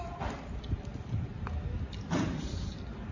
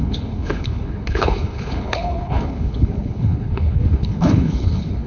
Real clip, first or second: first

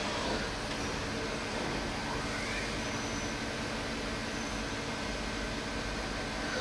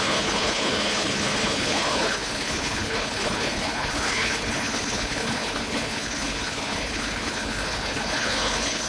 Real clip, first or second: first